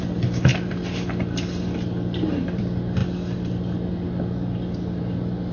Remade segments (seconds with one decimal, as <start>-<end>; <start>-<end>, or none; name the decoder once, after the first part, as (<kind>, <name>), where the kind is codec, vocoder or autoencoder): none